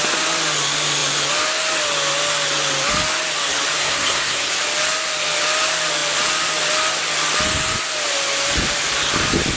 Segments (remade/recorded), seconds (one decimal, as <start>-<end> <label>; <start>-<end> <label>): 0.0-3.8 recorded; 3.8-4.5 remade; 4.5-9.6 recorded